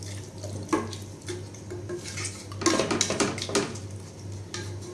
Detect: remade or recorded recorded